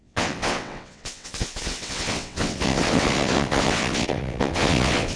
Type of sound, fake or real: fake